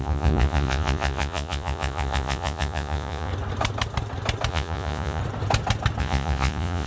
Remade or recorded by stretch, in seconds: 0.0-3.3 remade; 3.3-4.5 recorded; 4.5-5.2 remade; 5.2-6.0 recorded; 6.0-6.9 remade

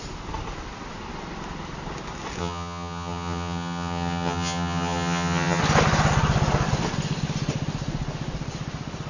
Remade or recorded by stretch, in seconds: 0.0-2.4 recorded; 2.4-5.6 remade; 5.6-9.1 recorded

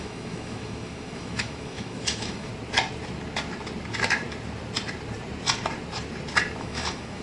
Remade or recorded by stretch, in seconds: 0.0-2.5 remade; 2.5-6.6 recorded; 6.6-7.2 remade

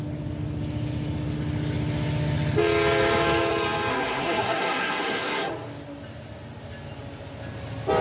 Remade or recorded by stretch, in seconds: 0.0-3.9 recorded; 3.9-5.5 remade; 5.5-8.0 recorded

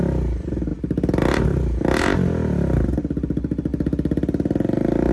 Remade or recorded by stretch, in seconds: 0.0-5.1 recorded

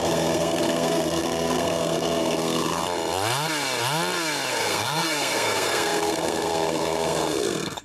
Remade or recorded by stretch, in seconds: 0.0-2.8 remade; 2.8-4.5 recorded; 4.5-7.8 remade

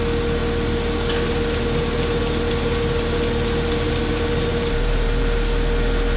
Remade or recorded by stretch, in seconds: 0.0-4.5 recorded; 4.5-5.2 remade; 5.2-6.2 recorded

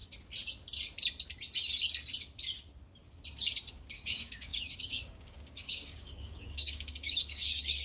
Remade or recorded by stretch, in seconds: 0.0-3.7 recorded; 3.7-7.8 remade